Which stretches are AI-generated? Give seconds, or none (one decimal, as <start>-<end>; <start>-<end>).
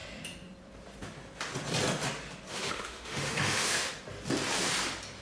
2.5-3.9